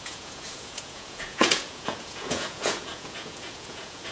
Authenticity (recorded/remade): remade